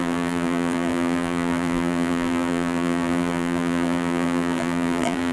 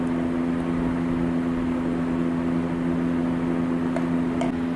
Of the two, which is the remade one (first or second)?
first